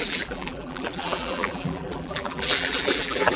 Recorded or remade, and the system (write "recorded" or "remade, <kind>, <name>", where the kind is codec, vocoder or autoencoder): remade, vocoder, BigVGAN v2